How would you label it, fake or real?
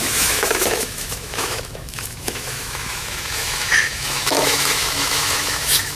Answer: fake